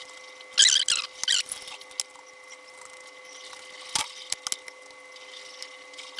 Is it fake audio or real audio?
real